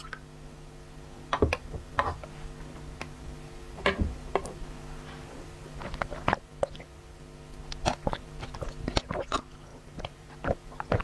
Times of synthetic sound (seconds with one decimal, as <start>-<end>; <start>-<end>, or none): 9.7-10.3